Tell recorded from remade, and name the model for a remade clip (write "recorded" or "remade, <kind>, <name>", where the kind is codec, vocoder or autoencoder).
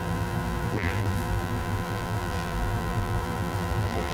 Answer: remade, vocoder, BigVGAN v2